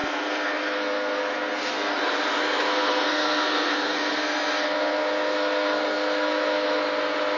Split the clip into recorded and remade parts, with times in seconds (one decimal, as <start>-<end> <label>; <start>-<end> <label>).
0.0-1.9 remade; 1.9-2.4 recorded; 2.4-6.8 remade; 6.8-7.4 recorded